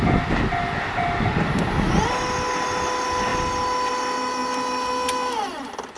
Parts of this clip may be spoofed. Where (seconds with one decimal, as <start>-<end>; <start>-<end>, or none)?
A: none